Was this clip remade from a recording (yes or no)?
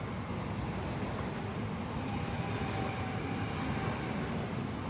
no